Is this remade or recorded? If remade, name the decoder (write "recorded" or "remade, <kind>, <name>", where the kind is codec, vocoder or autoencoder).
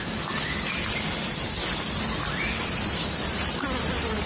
remade, vocoder, BigVGAN v2